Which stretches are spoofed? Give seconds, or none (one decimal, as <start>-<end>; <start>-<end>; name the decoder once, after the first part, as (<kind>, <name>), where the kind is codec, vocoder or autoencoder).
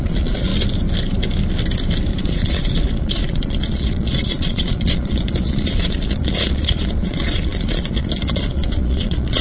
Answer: 0.0-0.5 (vocoder, Vocos); 2.1-9.4